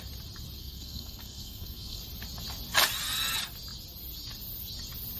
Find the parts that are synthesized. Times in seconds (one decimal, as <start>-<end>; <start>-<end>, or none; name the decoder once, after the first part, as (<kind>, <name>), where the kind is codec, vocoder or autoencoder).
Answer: 0.6-2.0 (codec, SNAC)